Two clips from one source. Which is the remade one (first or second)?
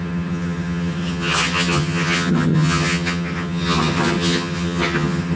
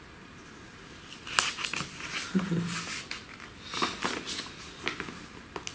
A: first